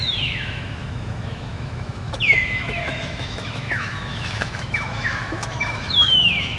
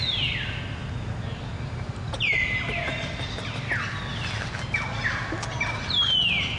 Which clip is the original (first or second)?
second